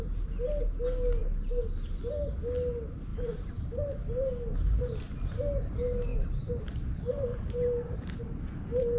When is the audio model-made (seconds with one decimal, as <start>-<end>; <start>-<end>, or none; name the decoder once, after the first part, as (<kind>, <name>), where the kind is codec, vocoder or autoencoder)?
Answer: 3.1-3.8 (vocoder, BigVGAN v2); 6.1-6.6; 7.3-8.2